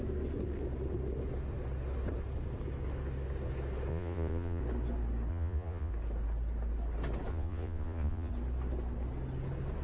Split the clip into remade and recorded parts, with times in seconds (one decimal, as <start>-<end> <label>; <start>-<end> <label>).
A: 0.0-3.9 recorded; 3.9-4.6 remade; 4.6-5.3 recorded; 5.3-5.9 remade; 5.9-7.3 recorded; 7.3-8.3 remade; 8.3-9.8 recorded